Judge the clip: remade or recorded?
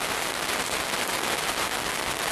recorded